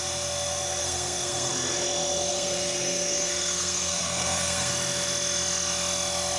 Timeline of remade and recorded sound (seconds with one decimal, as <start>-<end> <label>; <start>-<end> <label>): 0.0-0.8 recorded; 0.8-1.5 remade; 1.5-2.3 recorded; 2.3-4.7 remade; 4.7-6.4 recorded